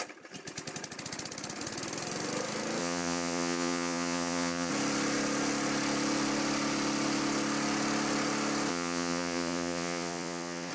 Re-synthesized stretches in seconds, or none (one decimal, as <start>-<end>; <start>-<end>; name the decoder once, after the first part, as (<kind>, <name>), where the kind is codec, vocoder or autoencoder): 2.8-4.7 (vocoder, Vocos); 8.7-10.7